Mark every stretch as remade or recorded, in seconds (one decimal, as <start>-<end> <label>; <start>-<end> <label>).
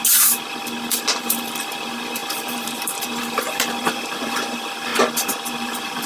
0.0-1.2 recorded; 1.2-4.9 remade; 4.9-5.5 recorded; 5.5-6.1 remade